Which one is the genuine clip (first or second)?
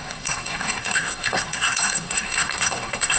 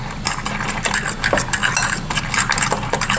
second